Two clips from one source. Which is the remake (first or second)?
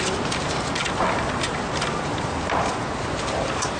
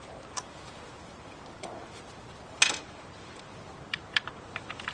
second